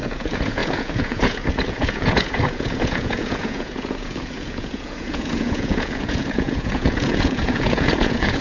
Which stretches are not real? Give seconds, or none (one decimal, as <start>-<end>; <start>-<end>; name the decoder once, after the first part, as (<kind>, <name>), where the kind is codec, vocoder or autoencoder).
0.0-8.4 (vocoder, Vocos)